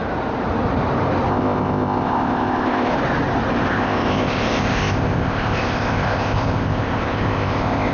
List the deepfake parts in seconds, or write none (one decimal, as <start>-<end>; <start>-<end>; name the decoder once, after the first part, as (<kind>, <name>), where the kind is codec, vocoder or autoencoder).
1.3-2.9 (codec, ZipCodec); 3.7-7.9